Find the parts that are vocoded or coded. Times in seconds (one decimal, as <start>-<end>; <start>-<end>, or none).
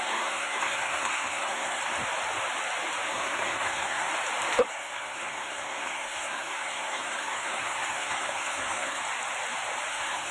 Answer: 0.0-1.8; 3.1-4.1; 4.7-9.0; 9.9-10.3